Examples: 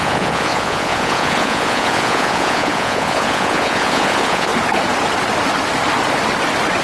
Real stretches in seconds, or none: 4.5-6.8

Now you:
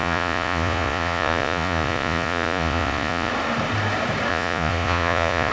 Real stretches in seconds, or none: 3.3-4.3

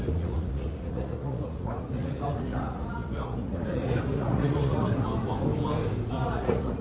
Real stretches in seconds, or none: 5.1-6.1

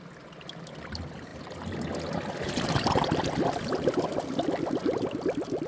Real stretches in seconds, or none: 0.0-5.7

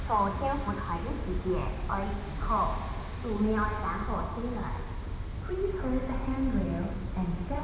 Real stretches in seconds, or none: 0.0-7.6